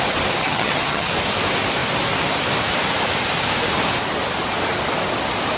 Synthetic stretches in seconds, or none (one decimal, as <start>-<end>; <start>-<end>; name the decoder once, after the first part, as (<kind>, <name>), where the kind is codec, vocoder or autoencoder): 0.4-1.1 (vocoder, HiFi-GAN)

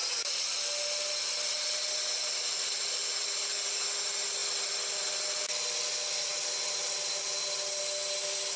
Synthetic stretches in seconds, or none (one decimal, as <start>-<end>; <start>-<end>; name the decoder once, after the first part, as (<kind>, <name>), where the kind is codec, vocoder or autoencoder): none

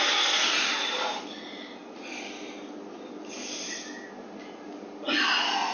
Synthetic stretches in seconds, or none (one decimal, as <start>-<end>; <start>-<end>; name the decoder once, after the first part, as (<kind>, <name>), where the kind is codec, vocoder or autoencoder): none

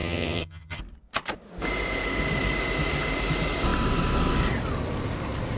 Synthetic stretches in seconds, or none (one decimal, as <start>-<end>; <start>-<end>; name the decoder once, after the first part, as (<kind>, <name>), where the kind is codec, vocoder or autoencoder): 0.0-0.8 (vocoder, HiFi-GAN)

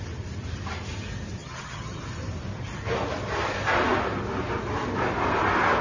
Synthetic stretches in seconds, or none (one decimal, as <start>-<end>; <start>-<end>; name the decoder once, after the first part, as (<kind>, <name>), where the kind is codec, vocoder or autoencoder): 1.4-2.0 (vocoder, HiFi-GAN)

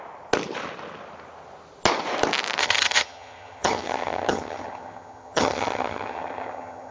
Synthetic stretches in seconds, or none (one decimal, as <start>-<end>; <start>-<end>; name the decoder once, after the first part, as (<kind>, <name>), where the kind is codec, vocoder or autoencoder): 2.6-6.9 (vocoder, HiFi-GAN)

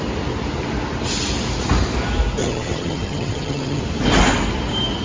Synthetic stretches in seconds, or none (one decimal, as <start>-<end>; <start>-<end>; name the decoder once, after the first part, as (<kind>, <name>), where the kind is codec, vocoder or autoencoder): 2.4-3.8 (vocoder, HiFi-GAN)